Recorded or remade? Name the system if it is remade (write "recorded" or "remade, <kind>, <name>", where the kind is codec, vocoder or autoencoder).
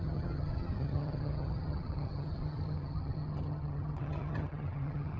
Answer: remade, vocoder, HiFi-GAN